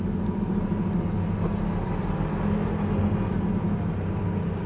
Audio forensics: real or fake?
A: real